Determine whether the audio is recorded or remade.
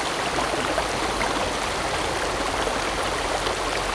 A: recorded